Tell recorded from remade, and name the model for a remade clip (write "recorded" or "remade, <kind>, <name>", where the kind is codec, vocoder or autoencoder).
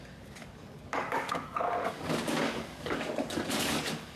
remade, codec, DAC